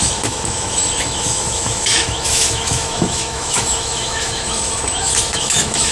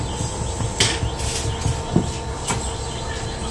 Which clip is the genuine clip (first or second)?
second